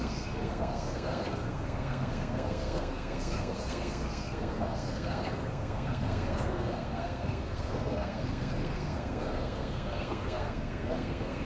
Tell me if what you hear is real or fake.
fake